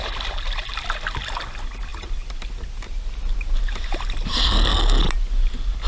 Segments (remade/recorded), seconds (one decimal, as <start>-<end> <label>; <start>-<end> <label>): 0.0-4.3 recorded; 4.3-5.0 remade; 5.0-5.9 recorded